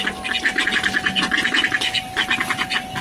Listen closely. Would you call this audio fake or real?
real